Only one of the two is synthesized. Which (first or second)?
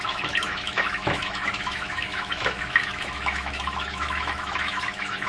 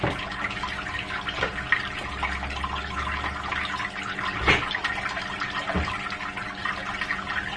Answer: first